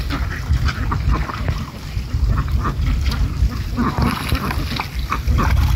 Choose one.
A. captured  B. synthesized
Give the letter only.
A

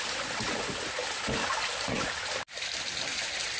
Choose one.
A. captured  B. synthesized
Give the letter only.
A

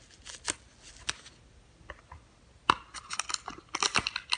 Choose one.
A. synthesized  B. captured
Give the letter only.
B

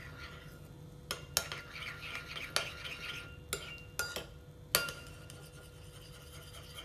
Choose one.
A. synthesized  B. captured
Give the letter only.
B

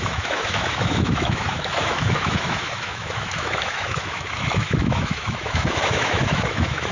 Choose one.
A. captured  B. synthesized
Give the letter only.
B